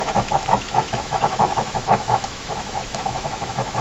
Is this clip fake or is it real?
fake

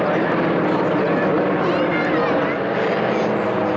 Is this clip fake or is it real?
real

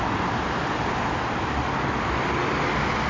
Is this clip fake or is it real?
real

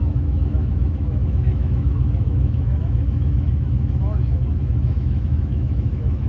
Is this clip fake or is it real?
fake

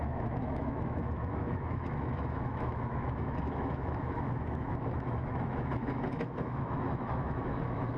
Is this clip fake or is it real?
fake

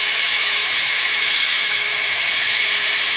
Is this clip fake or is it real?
fake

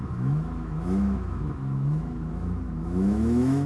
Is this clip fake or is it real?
fake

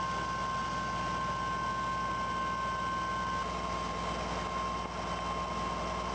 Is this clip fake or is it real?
real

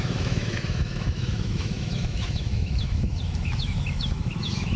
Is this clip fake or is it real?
fake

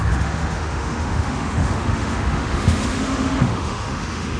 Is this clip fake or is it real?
fake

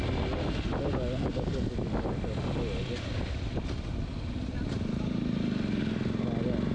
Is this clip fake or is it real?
real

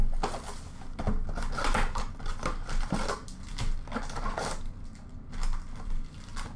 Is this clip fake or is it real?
real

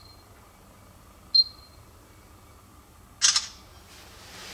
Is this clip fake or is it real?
real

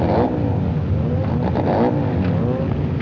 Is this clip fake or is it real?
real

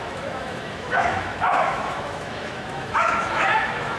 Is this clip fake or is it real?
fake